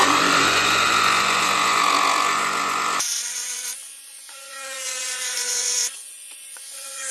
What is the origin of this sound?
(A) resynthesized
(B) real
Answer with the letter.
A